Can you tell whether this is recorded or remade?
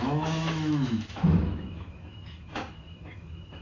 remade